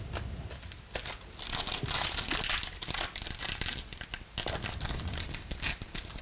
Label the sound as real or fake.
real